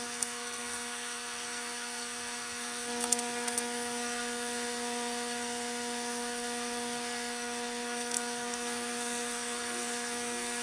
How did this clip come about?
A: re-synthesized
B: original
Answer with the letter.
A